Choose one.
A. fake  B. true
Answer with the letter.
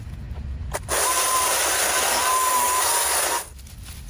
B